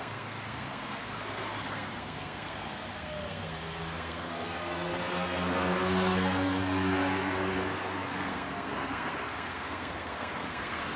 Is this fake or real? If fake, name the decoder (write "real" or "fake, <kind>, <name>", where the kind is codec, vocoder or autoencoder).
fake, codec, SNAC